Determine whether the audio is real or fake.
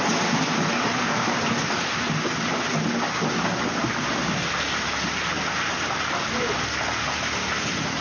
real